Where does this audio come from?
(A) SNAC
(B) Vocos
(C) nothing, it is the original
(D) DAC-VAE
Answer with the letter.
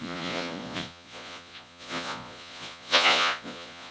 B